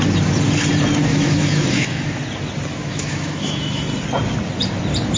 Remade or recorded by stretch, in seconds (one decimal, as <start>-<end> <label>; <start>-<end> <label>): 0.0-1.1 recorded; 1.1-2.2 remade; 2.2-2.7 recorded; 2.7-3.8 remade; 3.8-5.2 recorded